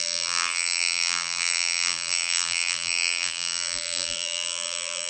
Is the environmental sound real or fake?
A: fake